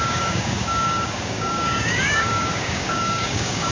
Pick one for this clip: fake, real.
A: fake